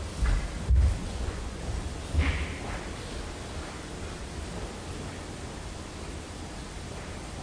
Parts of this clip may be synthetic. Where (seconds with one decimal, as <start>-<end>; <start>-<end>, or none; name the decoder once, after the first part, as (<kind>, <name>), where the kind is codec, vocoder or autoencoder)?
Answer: 1.0-1.6 (vocoder, Vocos)